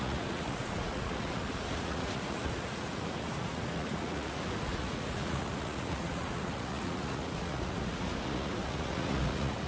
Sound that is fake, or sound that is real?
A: fake